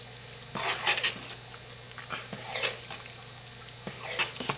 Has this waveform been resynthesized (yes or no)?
no